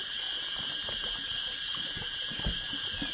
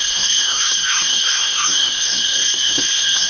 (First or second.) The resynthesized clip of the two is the second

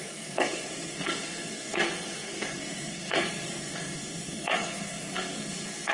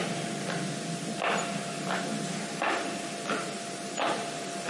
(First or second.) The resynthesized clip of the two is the first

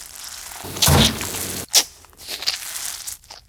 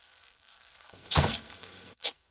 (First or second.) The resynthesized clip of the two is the second